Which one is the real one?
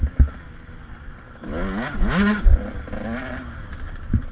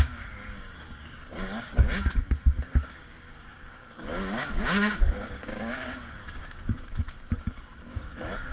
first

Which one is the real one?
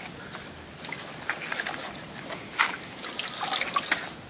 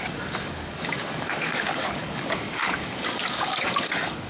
first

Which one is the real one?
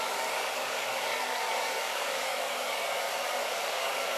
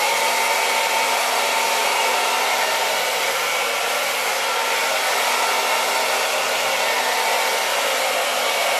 second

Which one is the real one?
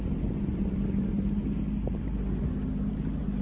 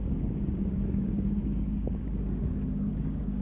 first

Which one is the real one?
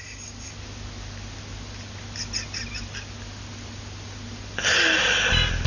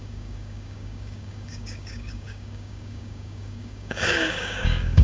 first